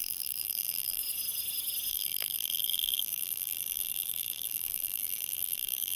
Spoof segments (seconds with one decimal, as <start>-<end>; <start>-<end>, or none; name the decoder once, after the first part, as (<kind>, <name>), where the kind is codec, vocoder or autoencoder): 0.0-1.0 (vocoder, BigVGAN v2); 1.9-6.0